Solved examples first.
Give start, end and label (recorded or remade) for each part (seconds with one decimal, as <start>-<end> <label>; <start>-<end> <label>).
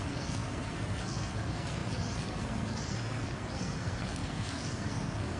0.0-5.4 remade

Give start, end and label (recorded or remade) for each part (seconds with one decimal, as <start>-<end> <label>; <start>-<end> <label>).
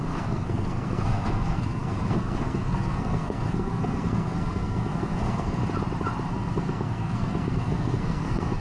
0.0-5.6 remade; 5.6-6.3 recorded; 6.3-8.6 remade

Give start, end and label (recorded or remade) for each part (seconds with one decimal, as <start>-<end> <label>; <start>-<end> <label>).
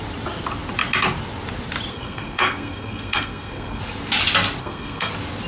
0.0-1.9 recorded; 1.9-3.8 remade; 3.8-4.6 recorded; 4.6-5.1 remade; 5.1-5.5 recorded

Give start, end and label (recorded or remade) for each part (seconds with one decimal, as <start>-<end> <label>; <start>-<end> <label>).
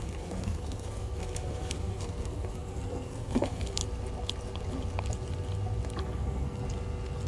0.0-3.8 remade; 3.8-6.0 recorded; 6.0-6.6 remade; 6.6-7.3 recorded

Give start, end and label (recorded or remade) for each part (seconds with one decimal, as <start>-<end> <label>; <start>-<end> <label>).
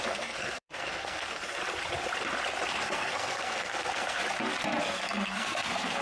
0.0-1.6 remade; 1.6-2.7 recorded; 2.7-4.2 remade; 4.2-4.8 recorded; 4.8-6.0 remade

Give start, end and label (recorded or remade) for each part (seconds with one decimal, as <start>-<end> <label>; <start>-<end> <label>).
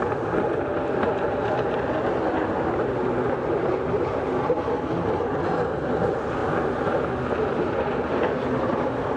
0.0-9.2 recorded